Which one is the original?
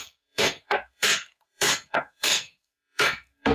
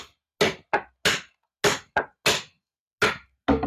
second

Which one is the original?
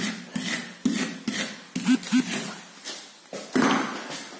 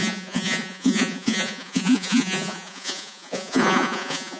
first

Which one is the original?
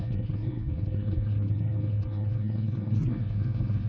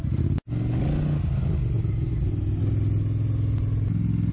second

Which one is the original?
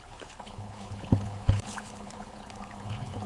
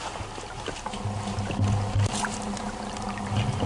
second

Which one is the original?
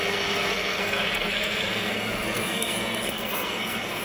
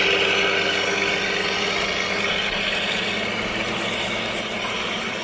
second